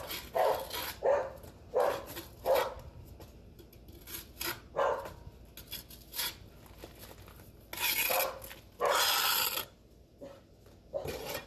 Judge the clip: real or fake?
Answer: real